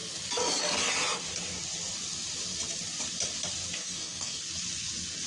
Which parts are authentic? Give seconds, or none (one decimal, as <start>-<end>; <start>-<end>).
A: 0.0-3.8; 4.4-5.3